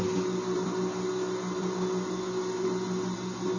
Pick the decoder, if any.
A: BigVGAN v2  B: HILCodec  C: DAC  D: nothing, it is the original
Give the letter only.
D